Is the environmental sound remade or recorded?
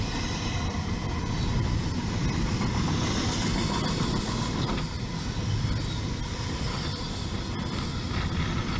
recorded